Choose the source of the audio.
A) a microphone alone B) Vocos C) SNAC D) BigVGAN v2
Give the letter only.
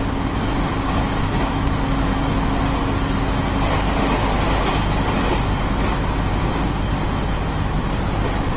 A